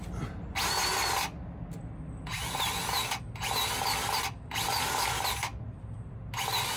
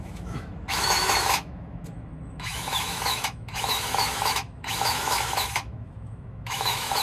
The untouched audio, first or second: first